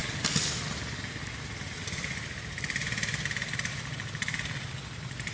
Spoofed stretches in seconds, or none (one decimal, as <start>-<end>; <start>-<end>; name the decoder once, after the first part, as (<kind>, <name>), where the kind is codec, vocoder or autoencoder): none

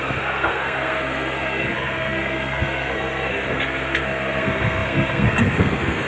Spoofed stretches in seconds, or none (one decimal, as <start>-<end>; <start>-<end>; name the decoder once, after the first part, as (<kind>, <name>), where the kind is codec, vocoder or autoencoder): 0.0-6.1 (codec, SNAC)

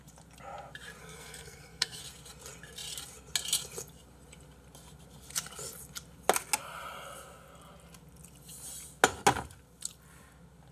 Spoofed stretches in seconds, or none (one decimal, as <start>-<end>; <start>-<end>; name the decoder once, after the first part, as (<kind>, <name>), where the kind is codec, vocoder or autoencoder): 1.0-2.0 (codec, SNAC)

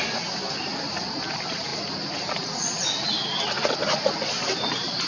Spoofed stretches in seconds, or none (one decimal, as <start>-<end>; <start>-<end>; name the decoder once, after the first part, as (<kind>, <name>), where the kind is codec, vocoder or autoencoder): none

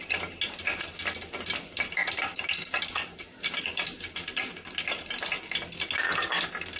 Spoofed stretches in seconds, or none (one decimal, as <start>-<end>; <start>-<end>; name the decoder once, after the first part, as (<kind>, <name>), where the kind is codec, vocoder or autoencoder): none

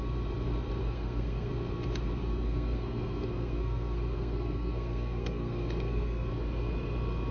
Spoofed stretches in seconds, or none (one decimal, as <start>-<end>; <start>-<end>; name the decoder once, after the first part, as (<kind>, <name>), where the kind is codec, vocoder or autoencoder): 0.8-1.5 (codec, SNAC); 2.2-6.3

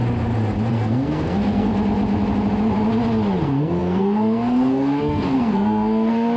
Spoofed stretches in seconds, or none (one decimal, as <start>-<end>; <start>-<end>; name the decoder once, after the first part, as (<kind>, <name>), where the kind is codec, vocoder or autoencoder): 0.7-1.7 (codec, SNAC); 3.4-6.4

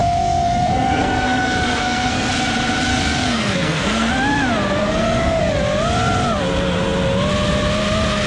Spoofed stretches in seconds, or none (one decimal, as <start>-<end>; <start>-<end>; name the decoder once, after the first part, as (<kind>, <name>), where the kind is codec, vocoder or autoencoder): 0.0-2.3 (codec, SNAC); 2.9-4.1; 4.8-5.4